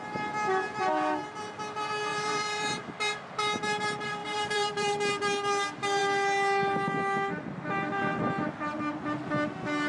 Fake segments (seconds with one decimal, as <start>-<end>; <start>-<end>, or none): 2.1-3.2; 4.2-5.0